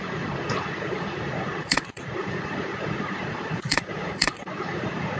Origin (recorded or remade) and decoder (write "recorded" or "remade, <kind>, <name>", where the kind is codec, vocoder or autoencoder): remade, vocoder, Vocos